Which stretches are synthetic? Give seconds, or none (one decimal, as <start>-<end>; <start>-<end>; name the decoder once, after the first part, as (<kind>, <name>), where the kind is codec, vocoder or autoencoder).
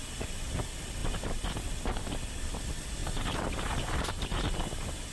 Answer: 3.0-4.1 (vocoder, BigVGAN v2)